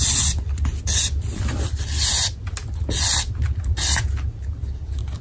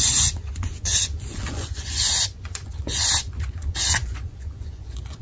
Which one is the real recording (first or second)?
first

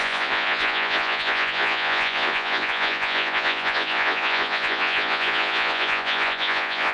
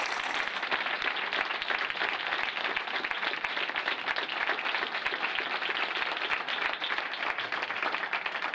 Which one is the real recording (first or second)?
second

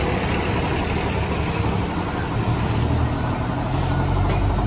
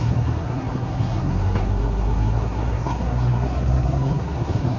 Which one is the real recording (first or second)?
first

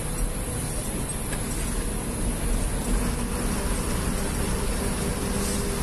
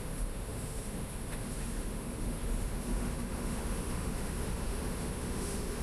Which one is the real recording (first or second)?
first